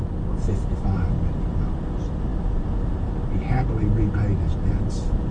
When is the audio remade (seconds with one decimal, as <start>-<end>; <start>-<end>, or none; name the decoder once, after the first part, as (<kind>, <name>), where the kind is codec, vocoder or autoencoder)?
none